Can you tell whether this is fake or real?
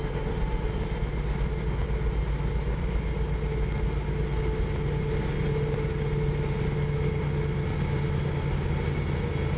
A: real